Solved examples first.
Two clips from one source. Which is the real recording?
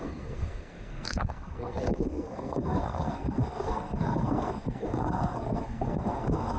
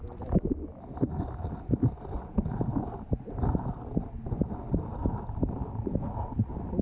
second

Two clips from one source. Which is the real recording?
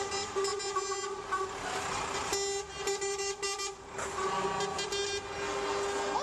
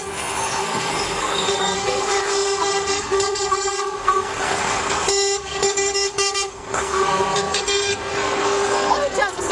first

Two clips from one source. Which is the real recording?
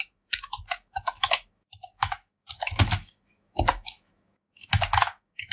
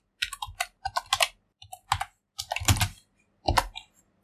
second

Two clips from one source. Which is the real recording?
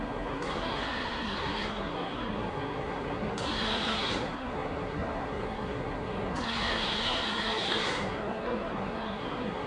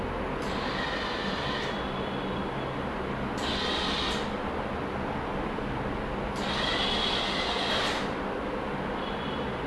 second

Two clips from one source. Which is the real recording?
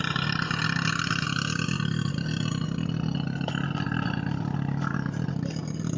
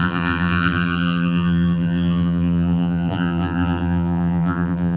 first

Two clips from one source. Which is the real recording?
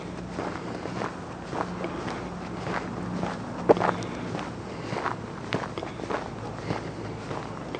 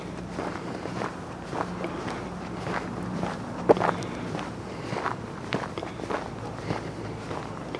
first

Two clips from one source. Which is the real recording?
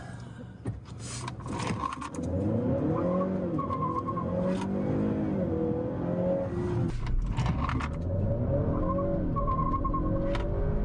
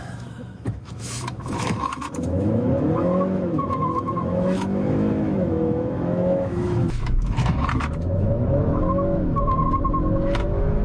first